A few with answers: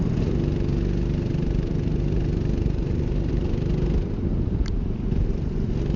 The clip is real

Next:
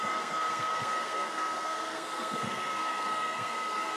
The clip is fake